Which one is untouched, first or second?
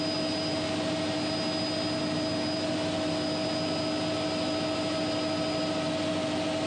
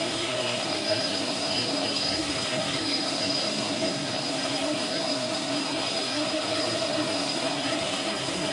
first